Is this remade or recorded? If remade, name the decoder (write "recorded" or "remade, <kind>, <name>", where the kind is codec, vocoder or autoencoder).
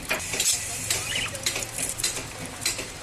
remade, vocoder, BigVGAN v2